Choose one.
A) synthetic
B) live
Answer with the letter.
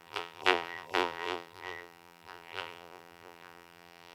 A